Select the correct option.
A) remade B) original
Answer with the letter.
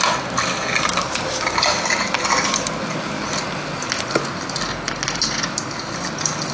B